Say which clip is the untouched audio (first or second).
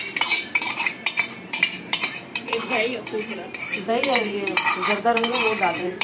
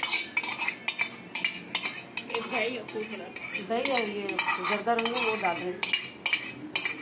second